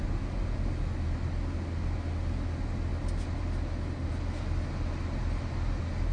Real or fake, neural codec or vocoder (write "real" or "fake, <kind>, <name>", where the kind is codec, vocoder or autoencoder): real